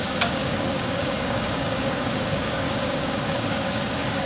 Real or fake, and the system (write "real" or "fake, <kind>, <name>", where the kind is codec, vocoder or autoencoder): fake, codec, DAC